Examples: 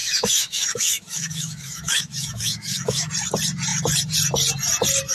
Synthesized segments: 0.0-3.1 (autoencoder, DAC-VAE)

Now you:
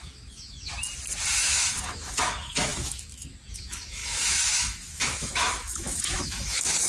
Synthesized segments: 0.0-0.7 (autoencoder, DAC-VAE); 1.3-6.9

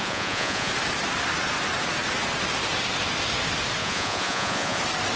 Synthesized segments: 0.0-0.7 (vocoder, Vocos); 3.8-4.8

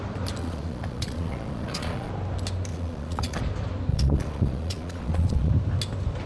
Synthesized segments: 0.4-2.1 (vocoder, Vocos); 2.7-3.4; 3.9-5.5

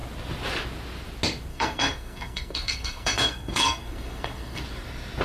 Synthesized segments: 1.5-4.6 (codec, SNAC)

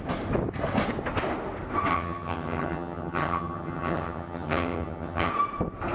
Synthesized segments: 1.9-5.3 (vocoder, HiFi-GAN)

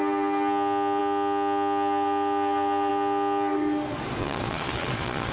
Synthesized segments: 4.2-5.3 (vocoder, Vocos)

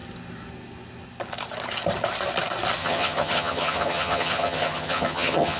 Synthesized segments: 2.8-5.6 (vocoder, HiFi-GAN)